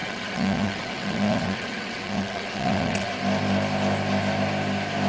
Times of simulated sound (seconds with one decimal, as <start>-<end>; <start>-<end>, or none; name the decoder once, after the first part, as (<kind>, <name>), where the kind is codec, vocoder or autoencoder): 0.0-3.1 (vocoder, WaveNeXt)